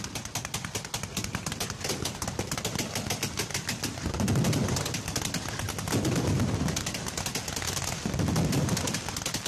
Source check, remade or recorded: recorded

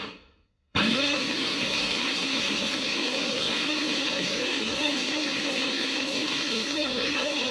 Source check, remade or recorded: remade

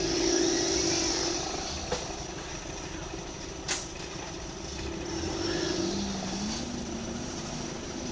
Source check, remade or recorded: recorded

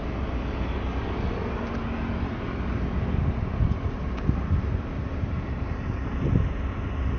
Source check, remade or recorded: recorded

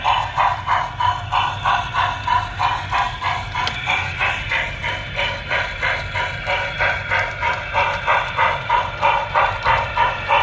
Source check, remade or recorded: recorded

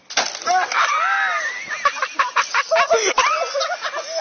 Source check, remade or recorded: recorded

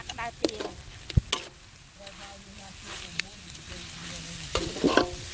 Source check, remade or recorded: recorded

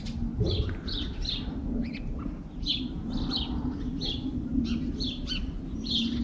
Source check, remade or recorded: recorded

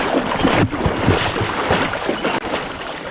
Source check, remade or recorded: recorded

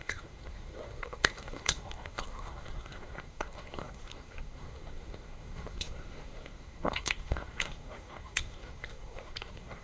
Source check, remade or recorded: remade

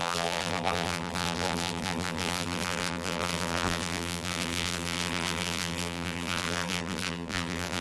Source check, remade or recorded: remade